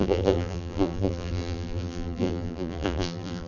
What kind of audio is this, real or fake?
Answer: fake